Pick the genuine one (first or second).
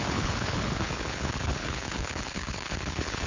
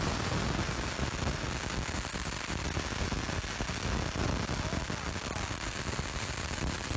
second